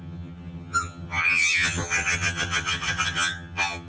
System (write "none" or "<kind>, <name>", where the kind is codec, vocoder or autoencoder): vocoder, HiFi-GAN